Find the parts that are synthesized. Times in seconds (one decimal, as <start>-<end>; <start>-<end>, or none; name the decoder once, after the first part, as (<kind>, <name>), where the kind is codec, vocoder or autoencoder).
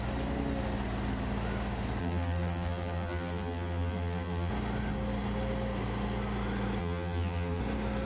2.0-4.5 (vocoder, BigVGAN v2); 6.8-7.6